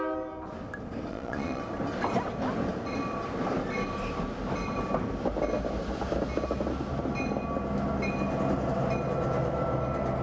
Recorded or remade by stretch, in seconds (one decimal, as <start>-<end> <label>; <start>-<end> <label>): 0.0-1.1 recorded; 1.1-1.6 remade; 1.6-10.2 recorded